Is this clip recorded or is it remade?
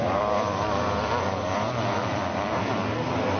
recorded